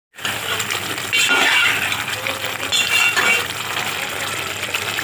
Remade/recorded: recorded